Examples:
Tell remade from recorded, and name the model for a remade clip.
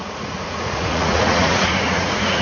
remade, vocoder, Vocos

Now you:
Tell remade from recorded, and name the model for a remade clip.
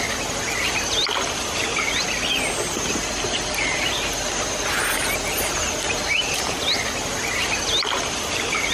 recorded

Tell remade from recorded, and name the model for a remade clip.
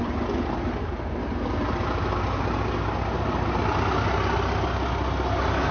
recorded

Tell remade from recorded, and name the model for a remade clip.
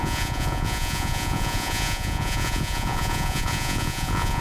remade, vocoder, Vocos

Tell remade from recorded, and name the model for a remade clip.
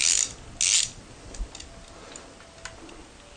recorded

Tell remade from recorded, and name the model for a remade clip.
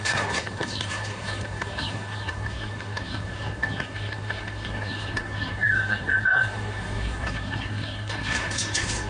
remade, codec, SNAC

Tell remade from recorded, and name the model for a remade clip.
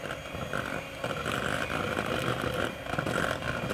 recorded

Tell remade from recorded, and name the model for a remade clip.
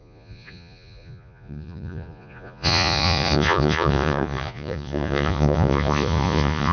remade, vocoder, Vocos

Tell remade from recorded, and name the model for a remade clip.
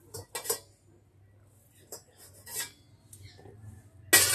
recorded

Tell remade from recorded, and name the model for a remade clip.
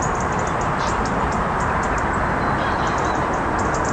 recorded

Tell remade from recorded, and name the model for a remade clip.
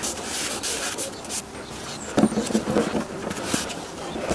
recorded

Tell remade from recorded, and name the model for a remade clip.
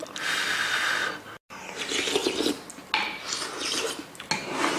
recorded